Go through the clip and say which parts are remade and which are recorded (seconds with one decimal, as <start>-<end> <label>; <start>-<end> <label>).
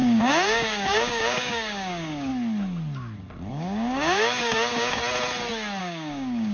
0.0-2.3 remade; 2.3-3.5 recorded; 3.5-5.0 remade; 5.0-5.8 recorded; 5.8-6.5 remade